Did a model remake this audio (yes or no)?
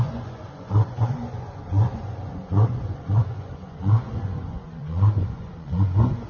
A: yes